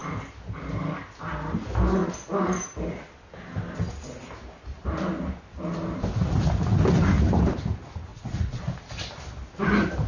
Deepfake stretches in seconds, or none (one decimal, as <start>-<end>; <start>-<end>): 8.1-8.6